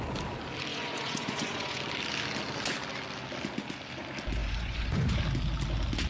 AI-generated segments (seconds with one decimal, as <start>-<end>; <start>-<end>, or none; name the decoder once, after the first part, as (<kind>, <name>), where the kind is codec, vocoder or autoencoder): 0.7-1.8 (vocoder, Vocos); 4.4-5.2